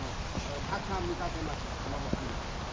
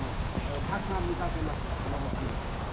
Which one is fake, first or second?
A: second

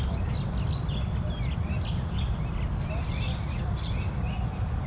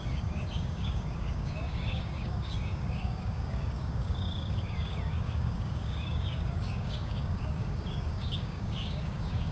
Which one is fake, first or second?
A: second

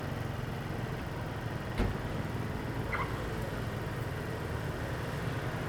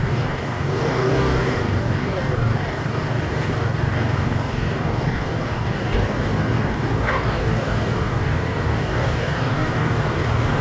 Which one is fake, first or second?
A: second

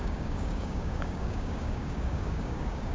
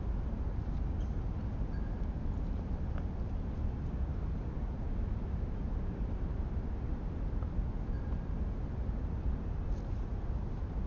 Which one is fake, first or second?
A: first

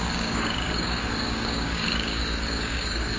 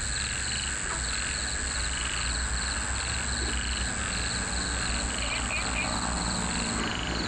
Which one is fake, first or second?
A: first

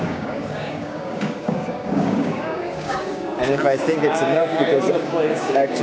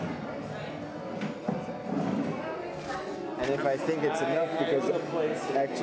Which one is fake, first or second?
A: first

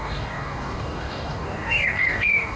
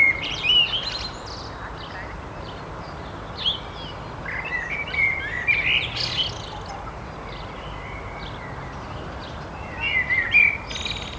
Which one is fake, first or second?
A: first